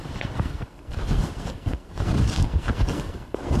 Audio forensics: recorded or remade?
remade